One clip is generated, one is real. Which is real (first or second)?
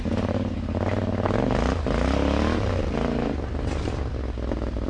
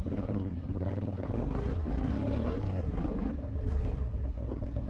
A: first